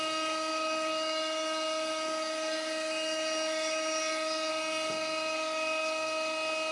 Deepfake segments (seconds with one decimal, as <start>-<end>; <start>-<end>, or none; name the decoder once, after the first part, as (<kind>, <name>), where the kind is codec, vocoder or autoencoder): 0.5-4.5 (autoencoder, DAC-VAE)